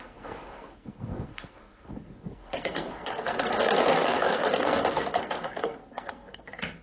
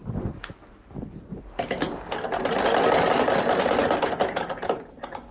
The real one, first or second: second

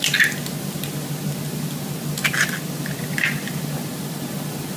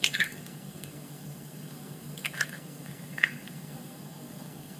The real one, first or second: first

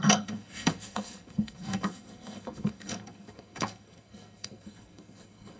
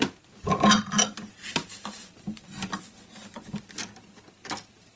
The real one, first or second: second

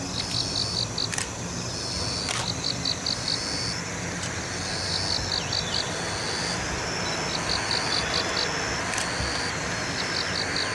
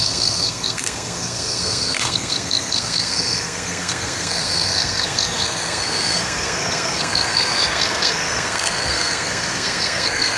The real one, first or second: first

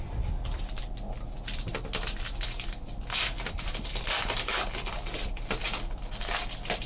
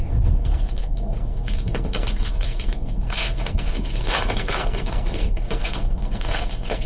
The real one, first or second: first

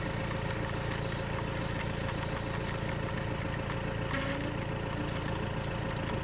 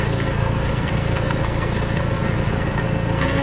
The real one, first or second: first